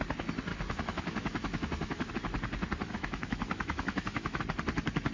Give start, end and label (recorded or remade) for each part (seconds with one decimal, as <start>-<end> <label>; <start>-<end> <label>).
0.0-0.5 recorded; 0.5-2.1 remade; 2.1-2.9 recorded; 2.9-4.4 remade; 4.4-5.1 recorded